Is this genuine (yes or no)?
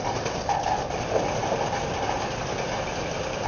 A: yes